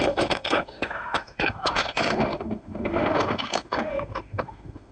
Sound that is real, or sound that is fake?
fake